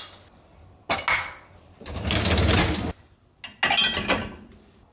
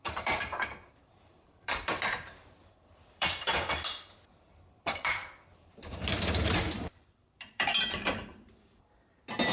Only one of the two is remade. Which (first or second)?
second